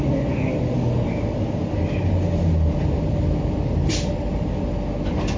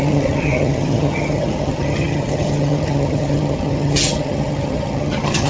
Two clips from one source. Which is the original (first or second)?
first